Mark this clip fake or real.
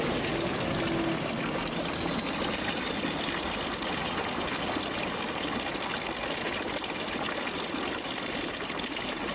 real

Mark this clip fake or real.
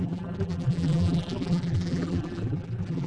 fake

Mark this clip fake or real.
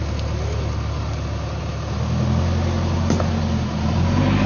real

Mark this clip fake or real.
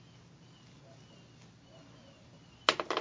real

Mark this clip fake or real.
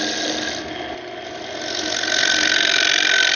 real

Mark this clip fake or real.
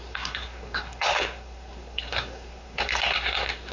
fake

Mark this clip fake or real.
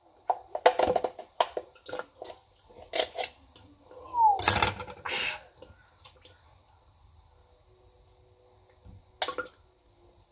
real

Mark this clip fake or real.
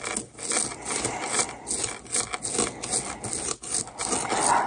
real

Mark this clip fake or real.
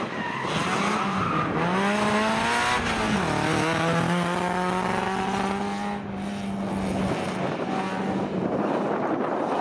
real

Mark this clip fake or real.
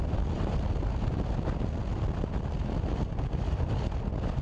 real